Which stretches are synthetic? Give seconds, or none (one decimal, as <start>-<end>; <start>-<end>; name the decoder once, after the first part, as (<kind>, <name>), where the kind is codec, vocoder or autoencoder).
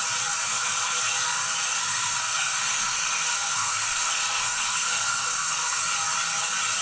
0.5-1.0 (codec, SNAC); 1.7-5.8